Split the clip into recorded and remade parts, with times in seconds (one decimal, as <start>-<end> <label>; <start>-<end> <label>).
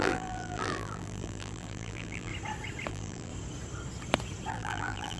0.0-2.3 remade; 2.3-2.9 recorded; 2.9-3.3 remade; 3.3-4.5 recorded; 4.5-5.2 remade